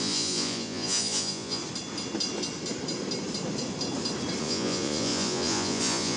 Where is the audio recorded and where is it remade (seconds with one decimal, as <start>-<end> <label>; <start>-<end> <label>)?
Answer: 0.0-1.6 remade; 1.6-4.4 recorded; 4.4-6.2 remade